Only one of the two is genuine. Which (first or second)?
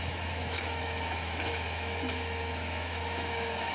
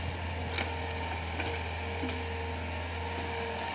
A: second